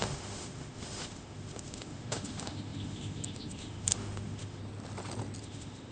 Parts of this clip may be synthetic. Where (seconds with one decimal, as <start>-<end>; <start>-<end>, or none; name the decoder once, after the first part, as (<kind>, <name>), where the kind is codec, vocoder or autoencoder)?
0.0-4.6 (autoencoder, DAC-VAE); 5.4-5.9